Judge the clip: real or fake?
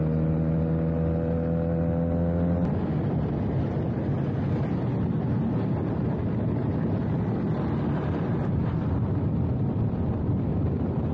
real